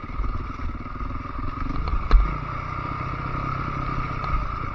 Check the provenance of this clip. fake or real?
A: real